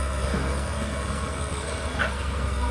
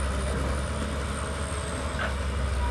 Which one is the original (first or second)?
second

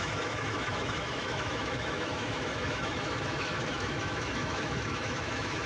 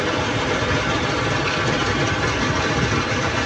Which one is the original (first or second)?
second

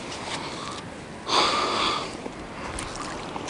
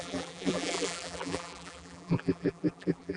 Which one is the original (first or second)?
first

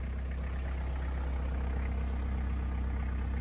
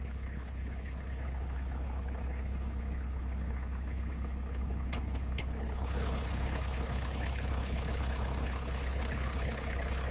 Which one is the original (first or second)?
first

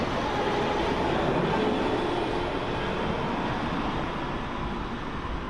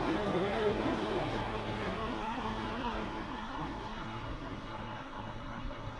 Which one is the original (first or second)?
first